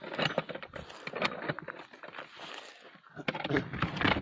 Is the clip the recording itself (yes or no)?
yes